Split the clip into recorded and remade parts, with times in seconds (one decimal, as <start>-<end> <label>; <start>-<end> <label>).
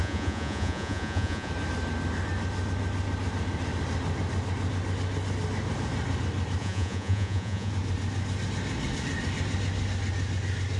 0.0-1.5 remade; 1.5-6.6 recorded; 6.6-7.7 remade; 7.7-10.8 recorded